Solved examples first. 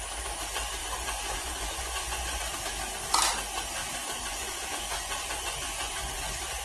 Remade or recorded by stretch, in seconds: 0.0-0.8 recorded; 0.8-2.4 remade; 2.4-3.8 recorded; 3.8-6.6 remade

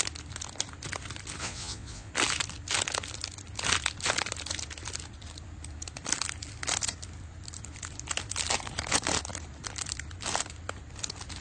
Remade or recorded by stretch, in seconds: 0.0-1.4 recorded; 1.4-2.1 remade; 2.1-11.4 recorded

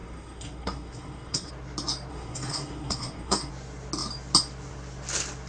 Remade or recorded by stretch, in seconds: 0.0-1.5 remade; 1.5-2.1 recorded; 2.1-3.5 remade; 3.5-5.5 recorded

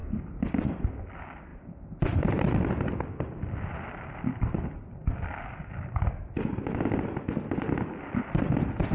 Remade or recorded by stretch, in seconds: 0.0-1.1 recorded; 1.1-5.0 remade; 5.0-7.9 recorded; 7.9-8.9 remade